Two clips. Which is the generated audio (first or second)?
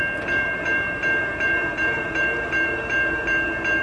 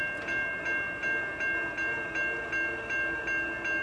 first